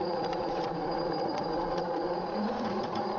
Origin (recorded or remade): remade